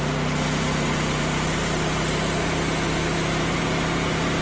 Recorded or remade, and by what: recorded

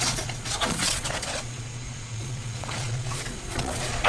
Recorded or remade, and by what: remade, vocoder, Vocos